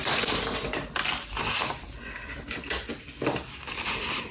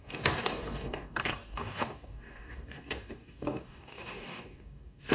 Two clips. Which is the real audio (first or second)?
first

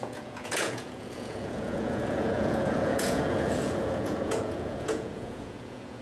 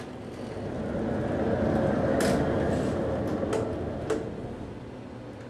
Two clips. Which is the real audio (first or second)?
second